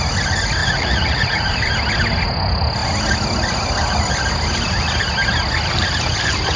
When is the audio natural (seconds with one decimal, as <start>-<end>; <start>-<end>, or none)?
0.0-0.6; 1.7-6.6